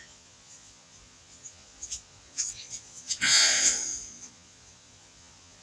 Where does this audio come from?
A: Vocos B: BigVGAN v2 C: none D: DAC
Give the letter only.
A